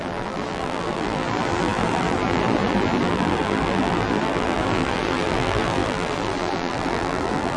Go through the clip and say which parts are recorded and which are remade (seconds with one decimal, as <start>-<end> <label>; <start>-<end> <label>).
0.0-7.6 remade